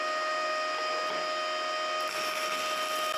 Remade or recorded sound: recorded